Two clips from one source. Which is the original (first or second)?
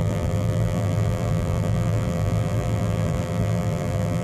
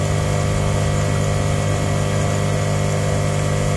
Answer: second